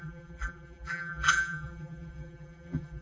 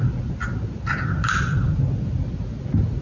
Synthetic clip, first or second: first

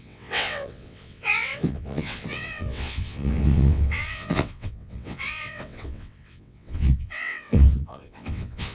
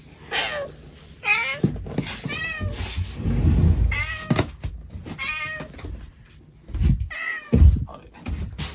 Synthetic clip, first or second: first